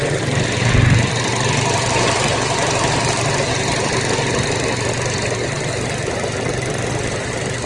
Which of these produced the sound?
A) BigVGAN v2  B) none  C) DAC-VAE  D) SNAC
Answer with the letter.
B